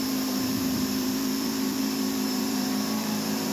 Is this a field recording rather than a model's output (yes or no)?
no